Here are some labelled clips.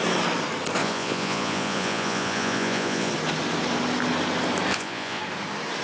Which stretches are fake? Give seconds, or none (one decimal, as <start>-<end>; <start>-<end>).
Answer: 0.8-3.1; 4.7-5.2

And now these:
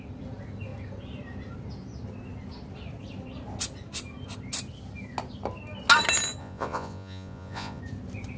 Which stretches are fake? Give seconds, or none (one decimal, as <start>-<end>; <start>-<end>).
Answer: 6.4-7.8

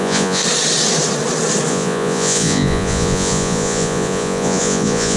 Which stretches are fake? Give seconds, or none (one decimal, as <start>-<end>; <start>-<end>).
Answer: 0.0-0.4; 1.7-5.2

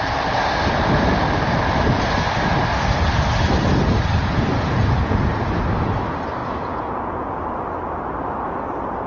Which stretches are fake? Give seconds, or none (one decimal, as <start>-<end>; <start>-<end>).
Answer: 4.2-5.6; 6.4-7.4